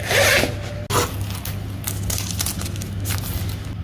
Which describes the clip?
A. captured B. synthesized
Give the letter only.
A